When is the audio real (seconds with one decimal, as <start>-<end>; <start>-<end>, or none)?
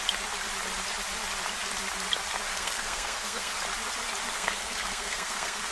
0.0-2.5; 3.5-4.3